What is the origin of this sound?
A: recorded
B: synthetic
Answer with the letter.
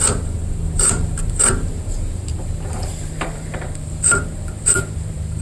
B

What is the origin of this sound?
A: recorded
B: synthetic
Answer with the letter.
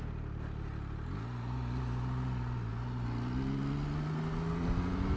A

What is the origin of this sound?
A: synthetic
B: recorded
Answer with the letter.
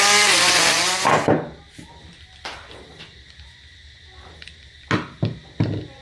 B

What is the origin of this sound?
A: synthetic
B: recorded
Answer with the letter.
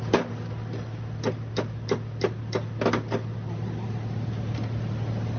B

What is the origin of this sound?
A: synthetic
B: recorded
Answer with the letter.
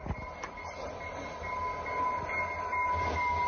B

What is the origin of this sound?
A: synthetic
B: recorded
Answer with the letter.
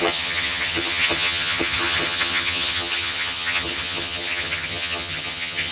A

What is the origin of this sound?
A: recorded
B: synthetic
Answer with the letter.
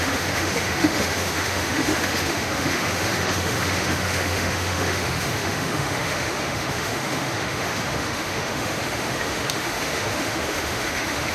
B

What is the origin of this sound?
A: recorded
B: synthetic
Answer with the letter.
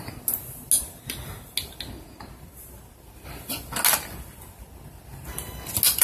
A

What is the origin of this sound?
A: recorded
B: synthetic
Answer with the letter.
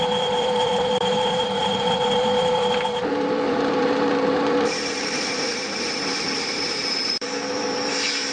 B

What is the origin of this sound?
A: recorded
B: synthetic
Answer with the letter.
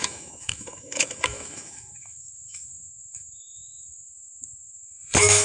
B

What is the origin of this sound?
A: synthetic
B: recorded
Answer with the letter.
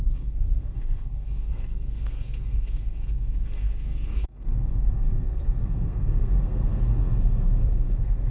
A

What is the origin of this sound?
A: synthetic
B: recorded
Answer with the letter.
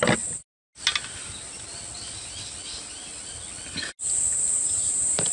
B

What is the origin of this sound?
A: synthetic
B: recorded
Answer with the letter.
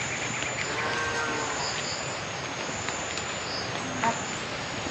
B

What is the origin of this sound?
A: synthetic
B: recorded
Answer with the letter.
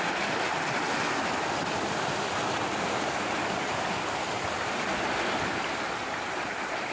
B